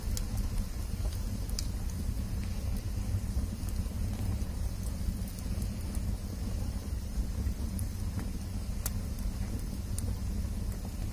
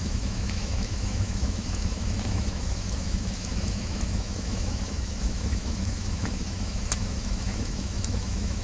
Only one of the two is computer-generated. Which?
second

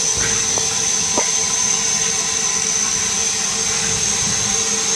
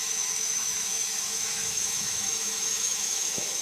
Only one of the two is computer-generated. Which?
second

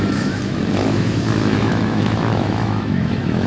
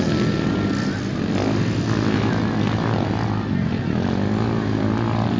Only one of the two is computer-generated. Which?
first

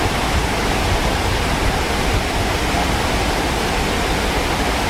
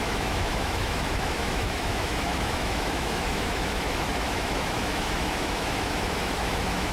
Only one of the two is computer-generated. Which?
second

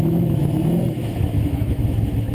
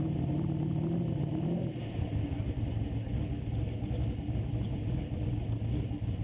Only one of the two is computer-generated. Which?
first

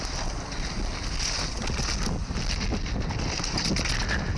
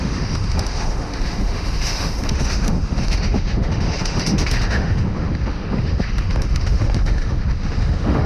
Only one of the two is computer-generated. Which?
second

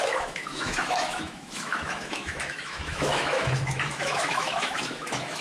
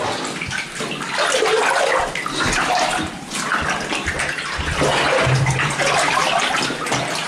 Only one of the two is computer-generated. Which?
first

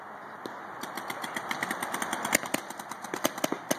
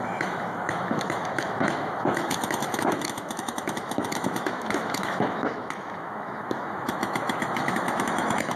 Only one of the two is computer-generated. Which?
second